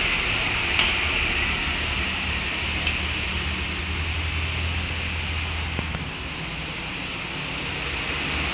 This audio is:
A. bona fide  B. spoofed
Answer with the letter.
A